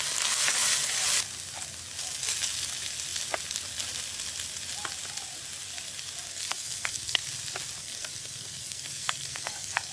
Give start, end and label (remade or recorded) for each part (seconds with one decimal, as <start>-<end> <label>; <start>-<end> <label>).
0.0-6.3 recorded; 6.3-7.2 remade; 7.2-7.8 recorded; 7.8-9.9 remade